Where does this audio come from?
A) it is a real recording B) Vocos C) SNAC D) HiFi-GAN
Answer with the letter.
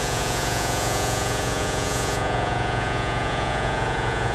B